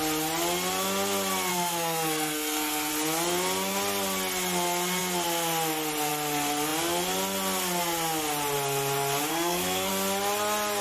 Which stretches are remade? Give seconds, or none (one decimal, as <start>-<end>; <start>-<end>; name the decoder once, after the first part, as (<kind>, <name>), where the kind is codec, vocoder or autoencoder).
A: 1.5-2.9 (codec, SNAC); 9.3-9.9